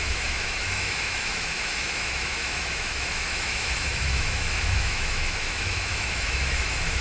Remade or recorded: remade